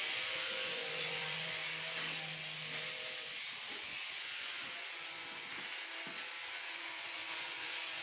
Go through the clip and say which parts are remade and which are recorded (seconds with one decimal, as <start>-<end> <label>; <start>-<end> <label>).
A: 0.0-1.6 remade; 1.6-3.7 recorded; 3.7-5.5 remade; 5.5-6.5 recorded; 6.5-8.0 remade